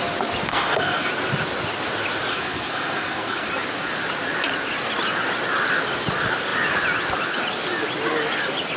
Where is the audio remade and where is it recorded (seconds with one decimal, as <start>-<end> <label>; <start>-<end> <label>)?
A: 0.0-0.5 recorded; 0.5-1.1 remade; 1.1-2.3 recorded; 2.3-3.5 remade; 3.5-8.8 recorded